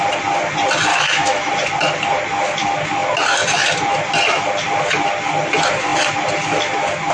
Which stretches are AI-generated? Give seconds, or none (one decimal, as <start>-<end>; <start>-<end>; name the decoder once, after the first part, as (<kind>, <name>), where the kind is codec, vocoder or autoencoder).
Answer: 0.9-1.5 (autoencoder, DAC-VAE)